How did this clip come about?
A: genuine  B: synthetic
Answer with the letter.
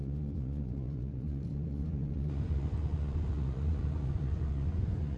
B